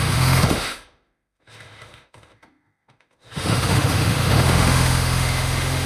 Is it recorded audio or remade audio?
remade